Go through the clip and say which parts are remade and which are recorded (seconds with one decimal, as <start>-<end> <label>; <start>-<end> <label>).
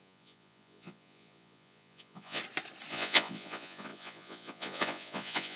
0.0-2.4 remade; 2.4-2.9 recorded; 2.9-5.6 remade